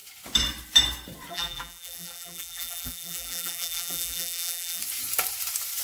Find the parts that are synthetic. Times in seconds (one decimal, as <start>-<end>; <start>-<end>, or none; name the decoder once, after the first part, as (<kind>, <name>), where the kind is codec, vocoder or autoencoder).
1.3-4.8 (vocoder, BigVGAN v2)